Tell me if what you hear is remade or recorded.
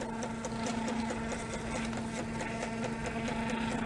recorded